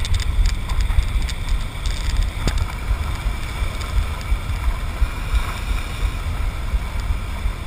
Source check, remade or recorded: recorded